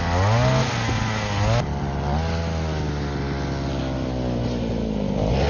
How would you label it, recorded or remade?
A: recorded